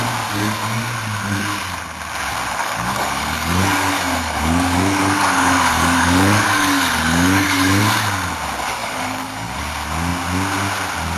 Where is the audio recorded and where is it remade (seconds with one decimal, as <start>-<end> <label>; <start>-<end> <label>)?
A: 0.0-2.6 recorded; 2.6-7.8 remade; 7.8-8.8 recorded; 8.8-9.6 remade; 9.6-11.2 recorded

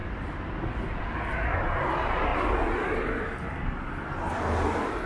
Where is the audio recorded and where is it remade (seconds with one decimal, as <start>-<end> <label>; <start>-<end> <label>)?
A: 0.0-5.1 recorded